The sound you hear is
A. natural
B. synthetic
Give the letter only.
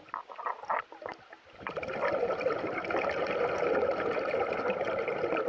A